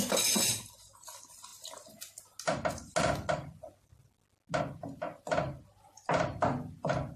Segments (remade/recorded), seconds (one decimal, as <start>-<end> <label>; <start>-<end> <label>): 0.0-7.2 recorded